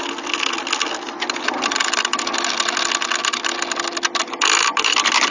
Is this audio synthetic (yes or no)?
no